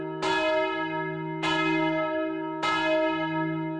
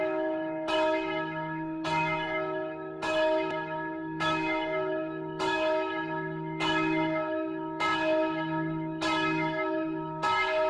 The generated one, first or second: second